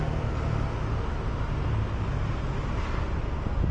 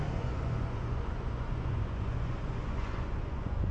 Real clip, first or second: first